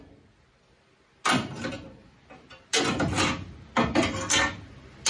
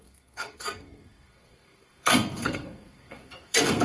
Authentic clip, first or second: first